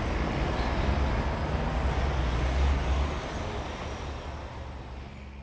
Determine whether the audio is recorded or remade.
recorded